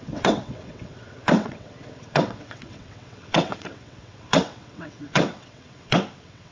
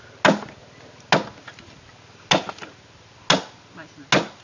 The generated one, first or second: first